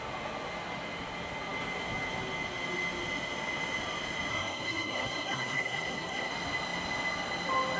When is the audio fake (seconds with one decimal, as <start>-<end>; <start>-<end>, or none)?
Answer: 4.3-6.3